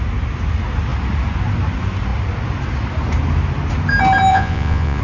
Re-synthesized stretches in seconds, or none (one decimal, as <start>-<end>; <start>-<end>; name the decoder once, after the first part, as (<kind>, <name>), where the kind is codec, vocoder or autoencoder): 4.3-5.0 (vocoder, Vocos)